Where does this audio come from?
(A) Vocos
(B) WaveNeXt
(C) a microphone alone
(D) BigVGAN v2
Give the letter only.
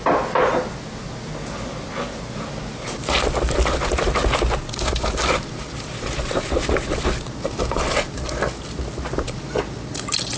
C